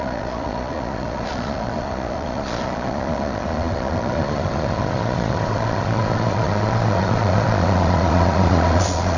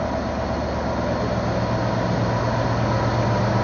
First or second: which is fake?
first